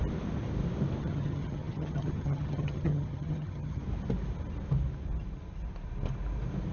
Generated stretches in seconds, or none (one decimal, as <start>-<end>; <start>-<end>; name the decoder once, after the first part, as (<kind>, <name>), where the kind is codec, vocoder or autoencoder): 1.0-3.8 (vocoder, HiFi-GAN)